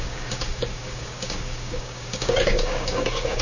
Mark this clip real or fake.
fake